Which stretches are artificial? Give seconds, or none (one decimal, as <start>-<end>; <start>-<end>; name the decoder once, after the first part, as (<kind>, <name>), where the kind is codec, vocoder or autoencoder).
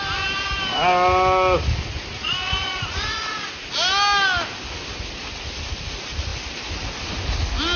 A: 2.1-3.5 (vocoder, Vocos)